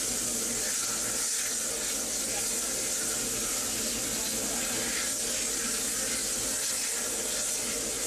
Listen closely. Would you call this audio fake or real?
real